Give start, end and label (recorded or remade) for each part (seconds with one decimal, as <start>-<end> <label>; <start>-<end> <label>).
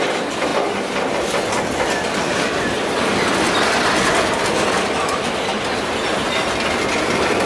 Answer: 0.0-7.5 recorded